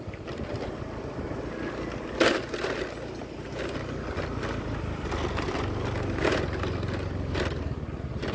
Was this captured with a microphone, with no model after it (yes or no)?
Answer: yes